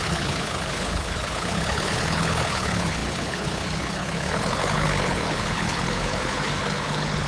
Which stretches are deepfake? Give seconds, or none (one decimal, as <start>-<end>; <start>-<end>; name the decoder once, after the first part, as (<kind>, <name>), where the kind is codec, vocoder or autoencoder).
0.0-7.3 (codec, HILCodec)